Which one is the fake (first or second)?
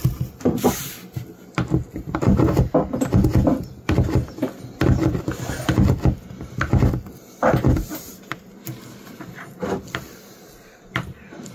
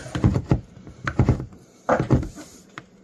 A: second